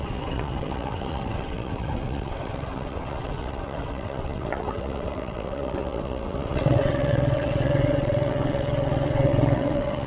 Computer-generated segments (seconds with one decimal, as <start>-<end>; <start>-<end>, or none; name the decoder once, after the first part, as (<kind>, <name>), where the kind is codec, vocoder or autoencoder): 0.0-10.1 (vocoder, WaveNeXt)